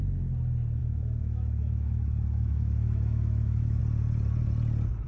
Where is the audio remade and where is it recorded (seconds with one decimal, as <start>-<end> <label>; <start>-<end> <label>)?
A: 0.0-0.8 recorded; 0.8-3.8 remade; 3.8-5.1 recorded